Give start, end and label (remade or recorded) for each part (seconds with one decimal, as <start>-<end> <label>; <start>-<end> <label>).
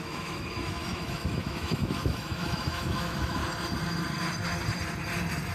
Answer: 0.0-3.4 remade; 3.4-5.5 recorded